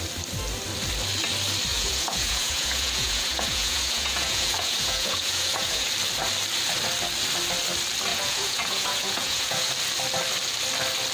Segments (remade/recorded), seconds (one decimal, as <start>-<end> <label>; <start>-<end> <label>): 0.0-1.7 recorded; 1.7-5.9 remade; 5.9-8.1 recorded; 8.1-9.7 remade; 9.7-11.1 recorded